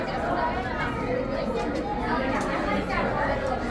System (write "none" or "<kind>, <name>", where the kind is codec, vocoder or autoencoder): none